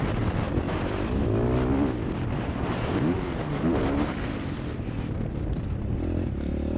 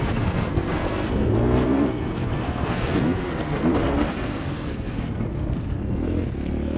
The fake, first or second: second